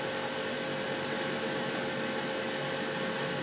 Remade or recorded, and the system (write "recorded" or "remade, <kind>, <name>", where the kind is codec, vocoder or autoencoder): recorded